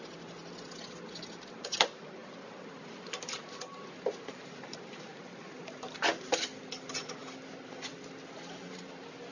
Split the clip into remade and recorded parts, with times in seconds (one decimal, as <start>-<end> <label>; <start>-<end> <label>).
0.0-2.2 recorded; 2.2-3.8 remade; 3.8-9.3 recorded